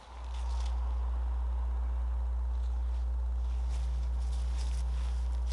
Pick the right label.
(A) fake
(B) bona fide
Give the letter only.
B